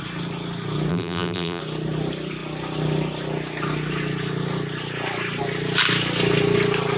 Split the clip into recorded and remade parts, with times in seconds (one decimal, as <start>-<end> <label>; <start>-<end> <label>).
0.0-0.9 recorded; 0.9-1.6 remade; 1.6-7.0 recorded